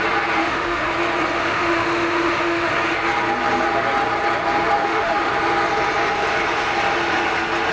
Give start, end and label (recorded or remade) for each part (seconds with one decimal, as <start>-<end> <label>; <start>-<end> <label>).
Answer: 0.0-0.4 recorded; 0.4-0.9 remade; 0.9-1.4 recorded; 1.4-2.7 remade; 2.7-4.8 recorded; 4.8-5.3 remade; 5.3-7.7 recorded